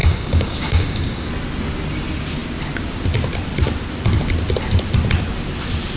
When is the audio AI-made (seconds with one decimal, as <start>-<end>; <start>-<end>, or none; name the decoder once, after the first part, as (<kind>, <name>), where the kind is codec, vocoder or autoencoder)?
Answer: 0.0-1.3 (codec, DAC)